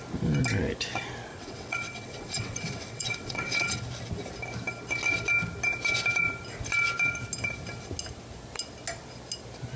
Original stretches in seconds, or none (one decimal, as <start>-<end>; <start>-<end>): 0.0-1.3; 3.8-9.8